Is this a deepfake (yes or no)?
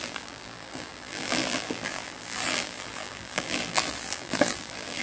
yes